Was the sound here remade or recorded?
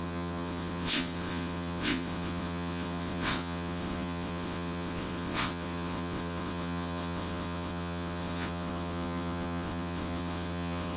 remade